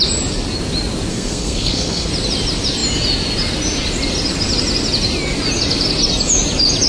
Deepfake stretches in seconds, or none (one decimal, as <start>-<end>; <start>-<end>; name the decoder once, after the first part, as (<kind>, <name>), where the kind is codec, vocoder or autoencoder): 1.1-2.1 (codec, SNAC)